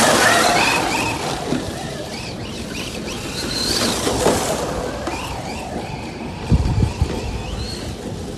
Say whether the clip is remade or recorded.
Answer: recorded